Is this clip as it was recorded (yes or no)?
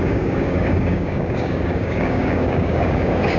no